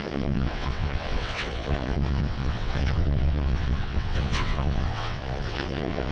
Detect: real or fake fake